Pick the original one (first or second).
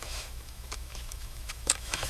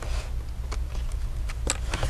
second